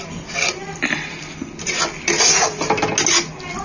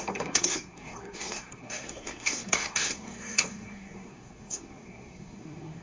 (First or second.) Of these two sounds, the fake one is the second